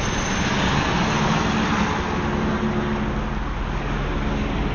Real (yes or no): yes